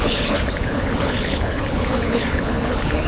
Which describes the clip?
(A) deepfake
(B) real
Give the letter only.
A